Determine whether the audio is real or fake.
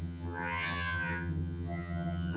fake